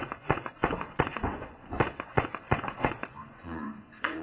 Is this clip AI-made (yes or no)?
yes